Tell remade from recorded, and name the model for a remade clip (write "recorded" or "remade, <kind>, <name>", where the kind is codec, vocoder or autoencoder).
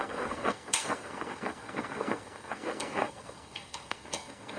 remade, codec, SNAC